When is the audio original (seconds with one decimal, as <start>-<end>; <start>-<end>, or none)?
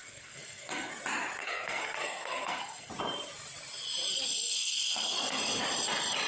0.9-1.4; 2.9-4.1; 5.6-6.3